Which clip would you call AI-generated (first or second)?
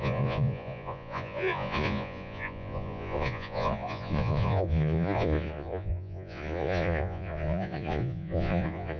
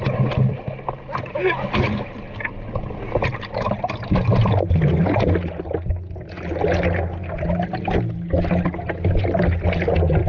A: first